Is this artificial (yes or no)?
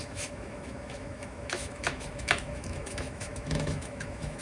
yes